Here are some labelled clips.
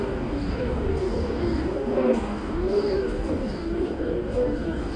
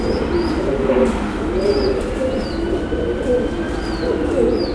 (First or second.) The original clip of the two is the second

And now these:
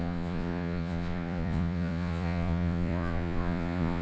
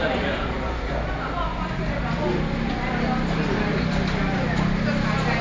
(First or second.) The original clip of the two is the second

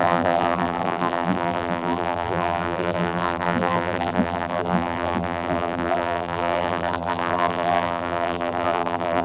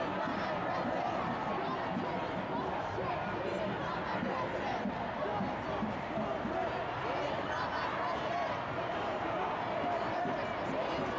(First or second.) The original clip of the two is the second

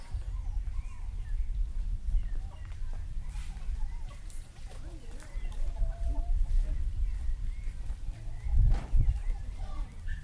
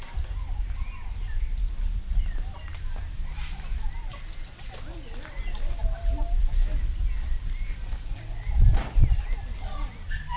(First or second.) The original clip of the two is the second